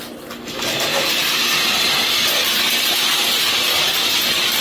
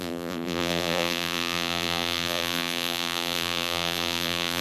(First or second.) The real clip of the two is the first